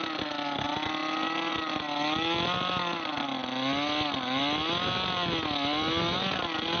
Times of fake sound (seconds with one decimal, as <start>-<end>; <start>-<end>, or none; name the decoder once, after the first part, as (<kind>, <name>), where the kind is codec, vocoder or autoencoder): none